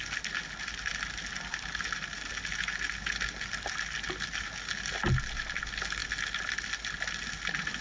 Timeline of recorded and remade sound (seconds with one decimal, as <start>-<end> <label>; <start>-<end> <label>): 0.0-7.8 recorded